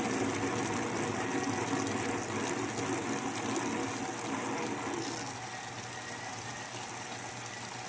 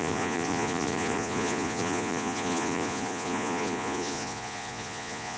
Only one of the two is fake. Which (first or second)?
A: second